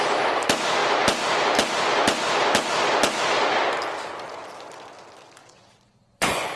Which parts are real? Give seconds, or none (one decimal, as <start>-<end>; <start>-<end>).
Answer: 0.0-5.4